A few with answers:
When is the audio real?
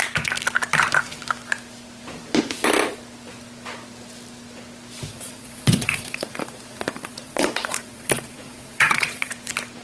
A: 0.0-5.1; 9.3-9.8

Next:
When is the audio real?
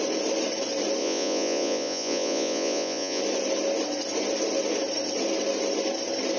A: 0.0-1.0; 3.2-6.4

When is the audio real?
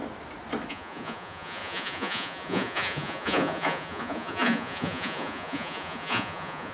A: 0.0-0.7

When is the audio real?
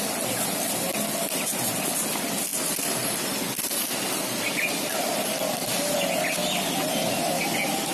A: 0.0-7.9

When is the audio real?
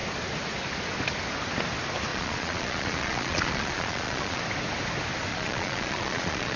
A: 0.0-2.1; 4.4-5.3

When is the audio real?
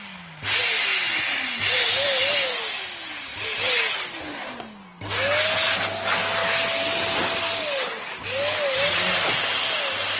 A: 0.0-10.2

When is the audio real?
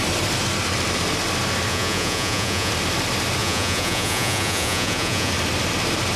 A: 0.0-1.7; 2.7-3.4; 5.3-6.2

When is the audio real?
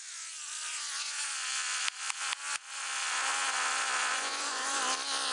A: 0.0-0.7; 1.3-4.1; 4.8-5.3